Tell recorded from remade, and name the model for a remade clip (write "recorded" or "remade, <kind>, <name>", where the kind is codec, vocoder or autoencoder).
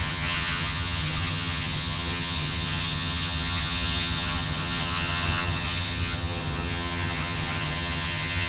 remade, vocoder, HiFi-GAN